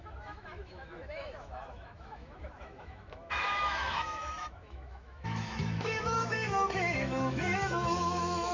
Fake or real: fake